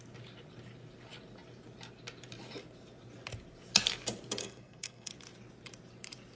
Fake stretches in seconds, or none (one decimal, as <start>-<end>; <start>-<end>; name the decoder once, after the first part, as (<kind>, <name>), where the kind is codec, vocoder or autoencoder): 4.4-5.1 (codec, SNAC)

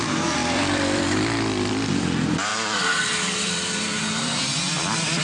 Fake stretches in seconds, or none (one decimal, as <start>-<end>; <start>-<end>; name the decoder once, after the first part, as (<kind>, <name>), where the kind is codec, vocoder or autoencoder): 0.4-1.7 (vocoder, BigVGAN v2); 2.5-5.2

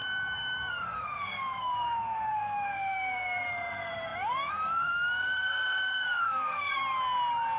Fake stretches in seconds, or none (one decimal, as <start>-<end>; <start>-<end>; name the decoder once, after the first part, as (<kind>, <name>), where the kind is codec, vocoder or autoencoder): 0.7-6.8 (codec, SNAC)

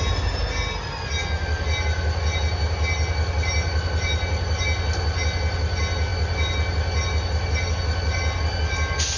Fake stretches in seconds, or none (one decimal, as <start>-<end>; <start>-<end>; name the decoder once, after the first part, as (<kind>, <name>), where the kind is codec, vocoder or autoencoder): none

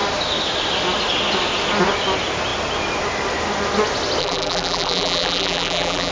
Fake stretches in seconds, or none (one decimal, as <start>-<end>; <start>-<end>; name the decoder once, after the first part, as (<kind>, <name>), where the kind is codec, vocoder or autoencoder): 4.2-6.1 (vocoder, BigVGAN v2)

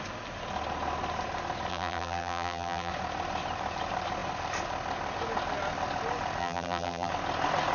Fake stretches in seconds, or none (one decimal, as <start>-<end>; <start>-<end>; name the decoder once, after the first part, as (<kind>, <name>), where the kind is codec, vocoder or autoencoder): 1.7-2.9 (vocoder, BigVGAN v2); 6.4-7.1